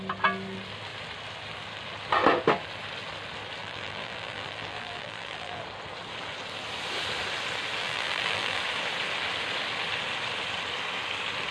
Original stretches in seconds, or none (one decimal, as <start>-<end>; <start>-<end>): 0.0-3.6; 5.6-7.8; 8.6-11.5